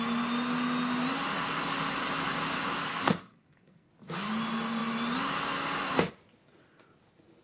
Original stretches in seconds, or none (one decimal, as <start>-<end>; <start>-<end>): 0.0-2.8; 3.9-7.4